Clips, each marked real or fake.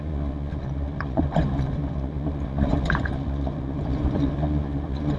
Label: fake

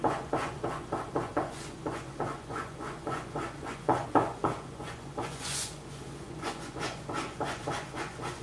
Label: fake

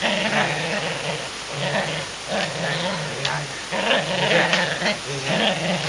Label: real